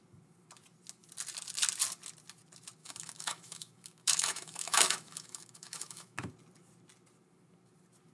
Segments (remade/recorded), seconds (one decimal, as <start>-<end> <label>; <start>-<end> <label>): 0.0-2.8 recorded; 2.8-6.3 remade; 6.3-8.1 recorded